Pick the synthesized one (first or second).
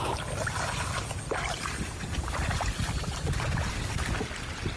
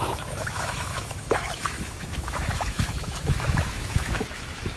second